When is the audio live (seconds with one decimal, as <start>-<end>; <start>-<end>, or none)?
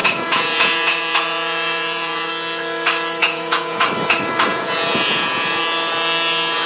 2.3-3.2; 3.8-4.5; 5.6-6.7